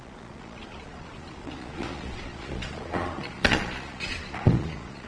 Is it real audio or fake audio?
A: fake